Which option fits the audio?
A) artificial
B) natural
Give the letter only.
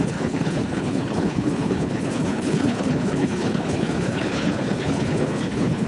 A